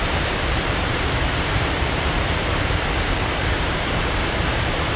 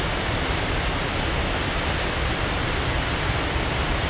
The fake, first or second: first